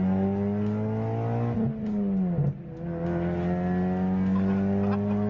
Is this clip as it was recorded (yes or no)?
yes